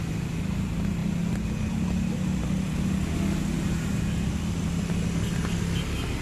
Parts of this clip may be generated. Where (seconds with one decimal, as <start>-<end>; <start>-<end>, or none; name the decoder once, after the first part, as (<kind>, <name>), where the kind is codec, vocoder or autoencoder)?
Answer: none